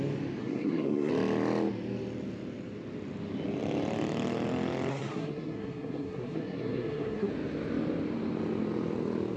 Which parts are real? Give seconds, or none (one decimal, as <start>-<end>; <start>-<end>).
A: 0.0-0.4; 1.1-4.9; 7.3-9.4